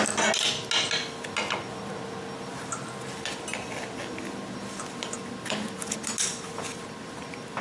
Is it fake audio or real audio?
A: real